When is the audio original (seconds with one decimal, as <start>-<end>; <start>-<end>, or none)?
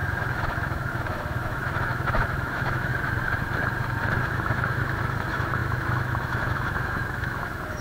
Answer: 2.9-4.2